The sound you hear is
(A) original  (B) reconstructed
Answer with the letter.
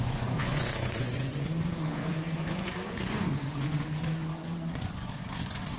B